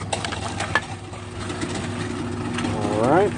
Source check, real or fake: real